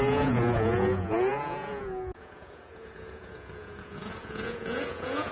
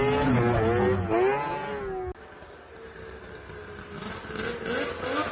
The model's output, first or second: first